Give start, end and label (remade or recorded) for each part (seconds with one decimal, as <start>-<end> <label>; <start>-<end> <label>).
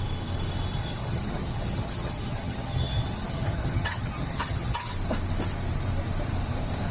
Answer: 0.0-0.8 recorded; 0.8-4.9 remade; 4.9-6.9 recorded